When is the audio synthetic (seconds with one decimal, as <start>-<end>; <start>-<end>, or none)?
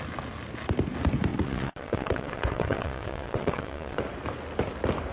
1.3-4.0